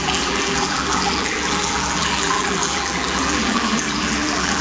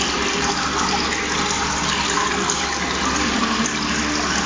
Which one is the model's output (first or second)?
first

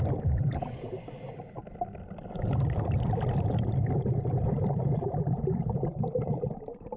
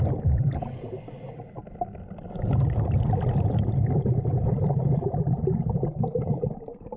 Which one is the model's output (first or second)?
first